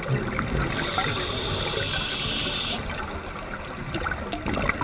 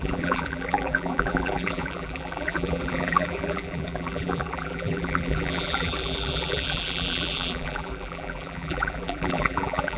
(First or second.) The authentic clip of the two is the first